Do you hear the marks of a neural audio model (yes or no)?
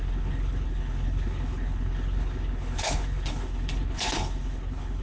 yes